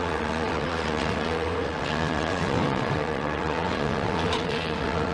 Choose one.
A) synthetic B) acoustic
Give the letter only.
A